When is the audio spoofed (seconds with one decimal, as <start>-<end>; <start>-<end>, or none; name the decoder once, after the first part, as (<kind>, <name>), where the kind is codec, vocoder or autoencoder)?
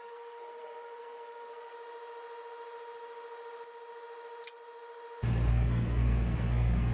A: 0.0-1.7 (codec, SNAC); 5.5-6.9